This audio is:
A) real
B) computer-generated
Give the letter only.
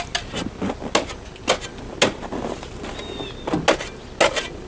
A